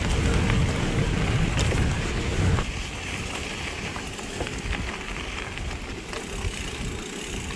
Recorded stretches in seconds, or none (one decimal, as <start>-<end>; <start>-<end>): 0.0-7.6